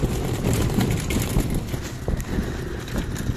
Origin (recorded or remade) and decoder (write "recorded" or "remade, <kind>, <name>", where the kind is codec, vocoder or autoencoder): recorded